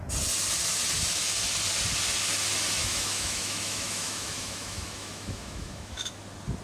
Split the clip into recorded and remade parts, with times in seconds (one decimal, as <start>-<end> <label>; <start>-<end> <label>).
0.0-2.8 recorded; 2.8-6.1 remade; 6.1-6.6 recorded

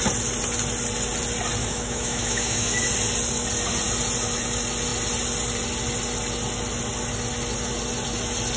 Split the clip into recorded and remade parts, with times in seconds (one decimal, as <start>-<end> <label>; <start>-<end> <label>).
0.0-1.6 recorded; 1.6-2.8 remade; 2.8-8.6 recorded

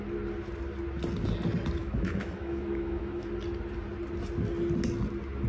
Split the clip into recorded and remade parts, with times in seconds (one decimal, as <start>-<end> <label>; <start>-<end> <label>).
0.0-1.8 recorded; 1.8-3.3 remade; 3.3-5.5 recorded

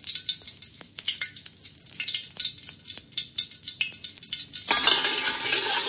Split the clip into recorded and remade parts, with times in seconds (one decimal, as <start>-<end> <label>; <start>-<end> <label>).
0.0-0.7 recorded; 0.7-1.8 remade; 1.8-5.9 recorded

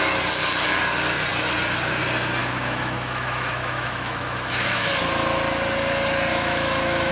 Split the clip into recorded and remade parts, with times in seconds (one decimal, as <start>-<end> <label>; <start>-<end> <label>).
0.0-2.4 recorded; 2.4-4.9 remade; 4.9-6.3 recorded; 6.3-7.1 remade

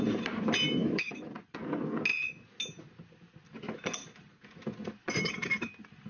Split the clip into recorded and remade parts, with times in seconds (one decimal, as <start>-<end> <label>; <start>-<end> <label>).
0.0-0.8 recorded; 0.8-1.3 remade; 1.3-6.1 recorded

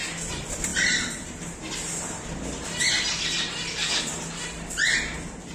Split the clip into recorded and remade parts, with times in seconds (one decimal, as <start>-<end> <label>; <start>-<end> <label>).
0.0-5.5 recorded